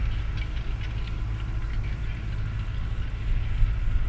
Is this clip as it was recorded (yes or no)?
yes